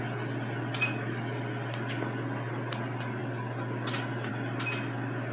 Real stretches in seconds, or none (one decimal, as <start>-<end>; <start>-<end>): 0.0-5.3

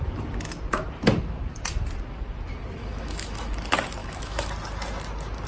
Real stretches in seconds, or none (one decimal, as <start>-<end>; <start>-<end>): 0.0-2.8; 3.5-4.0; 4.5-5.5

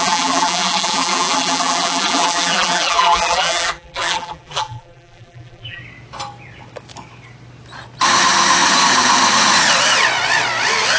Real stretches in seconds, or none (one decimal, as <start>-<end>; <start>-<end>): 5.8-11.0

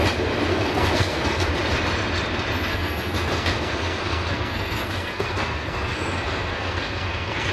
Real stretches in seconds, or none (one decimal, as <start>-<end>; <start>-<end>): 0.0-0.5; 1.5-2.7